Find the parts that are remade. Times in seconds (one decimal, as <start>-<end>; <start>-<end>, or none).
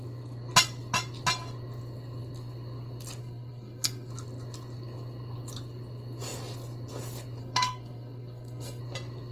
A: 3.2-4.1; 7.4-8.8